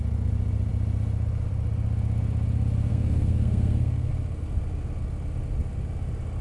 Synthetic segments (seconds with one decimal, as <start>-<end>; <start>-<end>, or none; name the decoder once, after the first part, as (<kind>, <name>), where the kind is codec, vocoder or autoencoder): 2.9-4.1 (codec, SNAC)